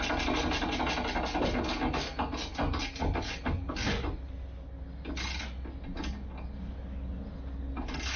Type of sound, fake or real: real